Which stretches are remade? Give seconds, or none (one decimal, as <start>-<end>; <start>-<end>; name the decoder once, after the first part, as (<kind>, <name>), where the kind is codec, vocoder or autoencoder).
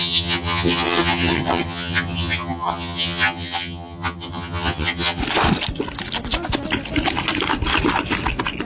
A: 0.0-5.2 (vocoder, HiFi-GAN)